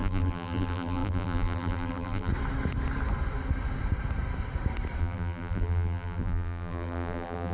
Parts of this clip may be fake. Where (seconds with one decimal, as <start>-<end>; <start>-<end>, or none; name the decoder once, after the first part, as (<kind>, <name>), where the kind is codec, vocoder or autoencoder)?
0.0-2.3 (vocoder, BigVGAN v2); 5.0-7.5